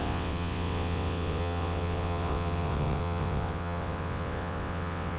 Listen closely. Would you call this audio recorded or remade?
remade